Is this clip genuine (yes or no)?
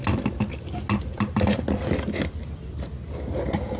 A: yes